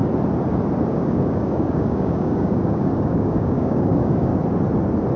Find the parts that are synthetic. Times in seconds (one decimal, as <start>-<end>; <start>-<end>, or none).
0.9-4.3